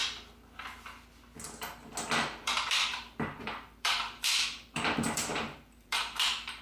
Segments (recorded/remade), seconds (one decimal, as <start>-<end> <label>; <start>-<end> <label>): 0.0-2.4 recorded; 2.4-6.6 remade